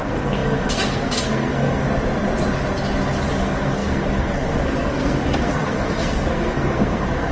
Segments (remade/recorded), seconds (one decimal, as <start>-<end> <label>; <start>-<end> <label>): 0.0-1.8 remade; 1.8-3.4 recorded; 3.4-7.3 remade